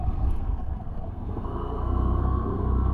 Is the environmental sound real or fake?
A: fake